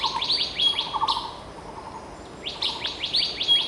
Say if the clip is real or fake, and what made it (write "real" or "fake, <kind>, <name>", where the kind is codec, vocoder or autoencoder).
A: real